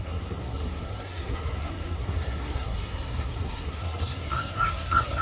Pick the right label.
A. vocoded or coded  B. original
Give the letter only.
A